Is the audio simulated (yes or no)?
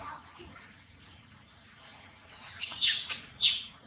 yes